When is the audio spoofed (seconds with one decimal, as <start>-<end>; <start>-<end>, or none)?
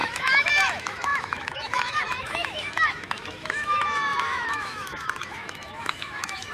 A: 0.0-6.5